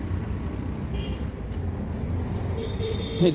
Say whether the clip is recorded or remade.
remade